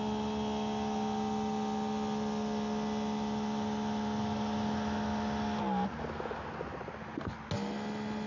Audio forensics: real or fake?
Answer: real